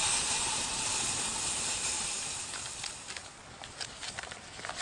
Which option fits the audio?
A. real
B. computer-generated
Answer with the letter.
A